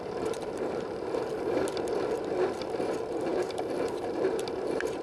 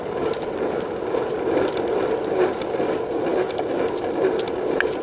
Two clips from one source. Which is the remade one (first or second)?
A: first